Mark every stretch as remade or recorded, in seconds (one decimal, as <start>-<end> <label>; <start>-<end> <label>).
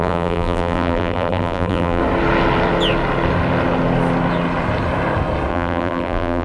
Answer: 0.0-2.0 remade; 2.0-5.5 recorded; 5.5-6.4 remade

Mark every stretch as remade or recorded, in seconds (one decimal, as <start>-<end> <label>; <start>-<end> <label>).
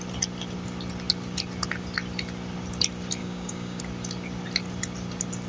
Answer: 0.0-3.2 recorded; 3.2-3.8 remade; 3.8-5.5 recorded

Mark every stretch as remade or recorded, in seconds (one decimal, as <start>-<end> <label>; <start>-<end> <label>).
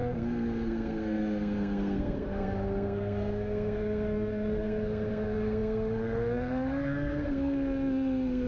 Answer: 0.0-8.5 remade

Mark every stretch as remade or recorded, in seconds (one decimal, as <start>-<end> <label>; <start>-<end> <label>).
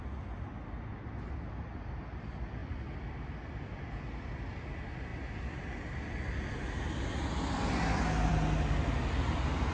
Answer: 0.0-9.7 recorded